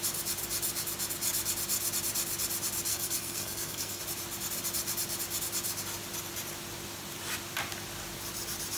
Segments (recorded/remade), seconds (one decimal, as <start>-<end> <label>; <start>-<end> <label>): 0.0-2.9 recorded; 2.9-4.0 remade; 4.0-8.8 recorded